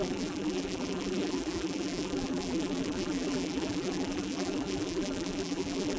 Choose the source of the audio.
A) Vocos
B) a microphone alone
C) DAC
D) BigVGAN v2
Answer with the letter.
D